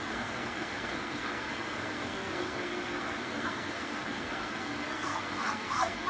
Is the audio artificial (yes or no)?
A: yes